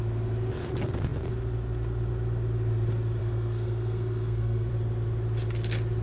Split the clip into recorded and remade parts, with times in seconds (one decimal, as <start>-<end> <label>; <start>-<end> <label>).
0.0-3.2 recorded; 3.2-4.7 remade; 4.7-6.0 recorded